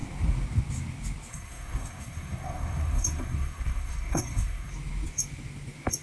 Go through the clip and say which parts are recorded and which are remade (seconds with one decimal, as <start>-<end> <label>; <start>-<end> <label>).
0.0-1.3 recorded; 1.3-4.7 remade; 4.7-6.0 recorded